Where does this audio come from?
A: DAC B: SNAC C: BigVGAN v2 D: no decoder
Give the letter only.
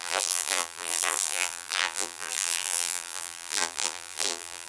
C